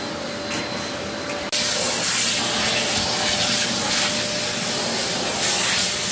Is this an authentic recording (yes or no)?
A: yes